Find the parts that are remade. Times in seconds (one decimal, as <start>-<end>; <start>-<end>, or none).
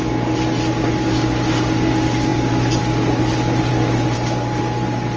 none